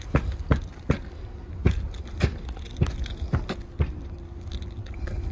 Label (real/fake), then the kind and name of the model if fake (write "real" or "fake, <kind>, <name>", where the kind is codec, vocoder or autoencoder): real